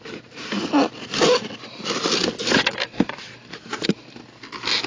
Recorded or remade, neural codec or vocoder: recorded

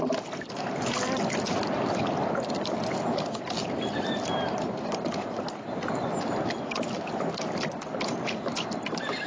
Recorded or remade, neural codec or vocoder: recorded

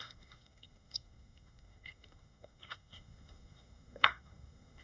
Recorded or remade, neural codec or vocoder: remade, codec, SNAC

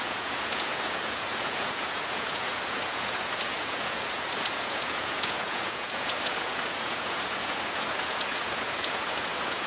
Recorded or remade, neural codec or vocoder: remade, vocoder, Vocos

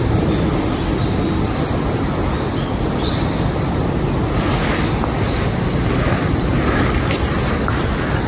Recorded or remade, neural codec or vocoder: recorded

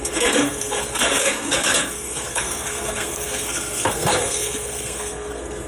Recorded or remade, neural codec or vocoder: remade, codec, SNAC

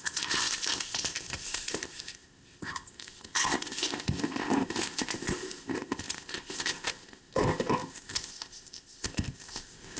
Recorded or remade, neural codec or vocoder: remade, codec, ZipCodec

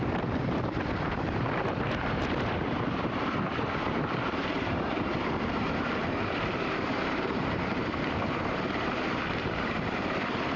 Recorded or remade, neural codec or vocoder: remade, vocoder, BigVGAN v2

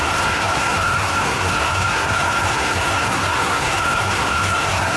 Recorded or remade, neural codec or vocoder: remade, codec, SNAC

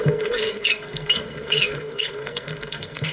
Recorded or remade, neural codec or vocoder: remade, codec, SNAC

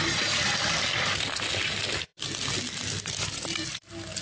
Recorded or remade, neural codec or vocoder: recorded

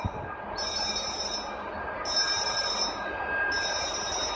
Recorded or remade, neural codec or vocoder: recorded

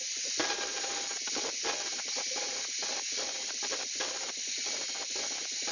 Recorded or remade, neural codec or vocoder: recorded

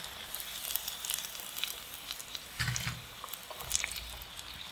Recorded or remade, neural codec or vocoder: recorded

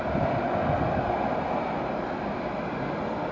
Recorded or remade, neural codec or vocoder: recorded